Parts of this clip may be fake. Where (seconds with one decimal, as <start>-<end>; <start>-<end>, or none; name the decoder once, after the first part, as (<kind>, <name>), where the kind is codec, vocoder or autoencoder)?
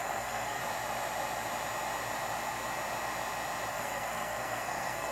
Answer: 0.0-0.6 (codec, SNAC); 3.7-5.1